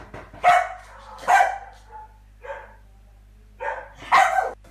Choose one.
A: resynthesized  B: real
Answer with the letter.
B